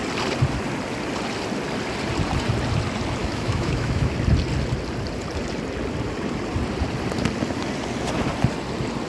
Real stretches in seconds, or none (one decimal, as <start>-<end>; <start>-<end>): 0.0-3.2; 4.1-9.1